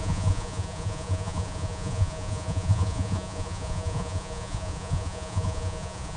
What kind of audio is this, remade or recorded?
remade